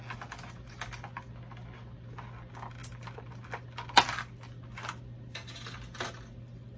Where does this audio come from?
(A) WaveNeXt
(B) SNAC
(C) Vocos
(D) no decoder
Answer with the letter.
D